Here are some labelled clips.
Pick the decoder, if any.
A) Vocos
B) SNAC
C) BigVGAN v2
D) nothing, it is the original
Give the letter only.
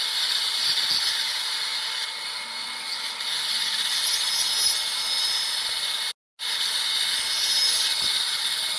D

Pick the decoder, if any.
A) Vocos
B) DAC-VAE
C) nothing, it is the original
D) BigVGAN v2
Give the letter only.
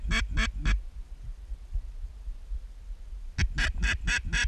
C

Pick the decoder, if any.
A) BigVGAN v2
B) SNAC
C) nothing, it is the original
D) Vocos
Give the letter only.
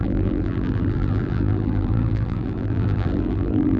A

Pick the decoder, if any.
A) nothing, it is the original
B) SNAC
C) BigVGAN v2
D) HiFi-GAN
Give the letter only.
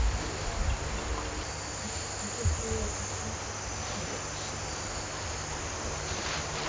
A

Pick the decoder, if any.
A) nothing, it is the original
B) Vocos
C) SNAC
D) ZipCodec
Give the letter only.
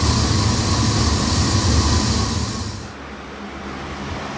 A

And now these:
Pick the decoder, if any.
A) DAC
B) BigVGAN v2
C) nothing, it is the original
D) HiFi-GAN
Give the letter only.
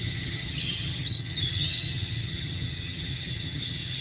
D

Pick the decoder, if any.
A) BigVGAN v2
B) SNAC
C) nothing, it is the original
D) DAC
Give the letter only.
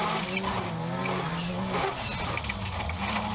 C